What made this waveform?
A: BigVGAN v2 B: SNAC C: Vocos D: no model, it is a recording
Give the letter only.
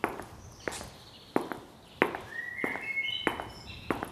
D